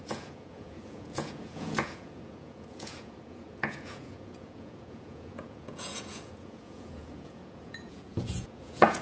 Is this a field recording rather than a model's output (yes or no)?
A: no